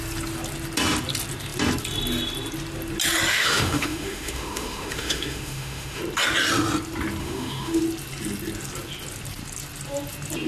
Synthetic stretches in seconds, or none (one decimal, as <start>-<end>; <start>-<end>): 3.3-6.0; 7.2-7.8